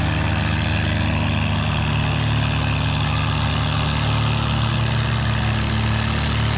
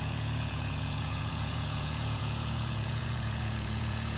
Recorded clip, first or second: first